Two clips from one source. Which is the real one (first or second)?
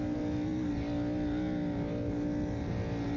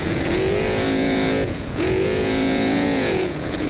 first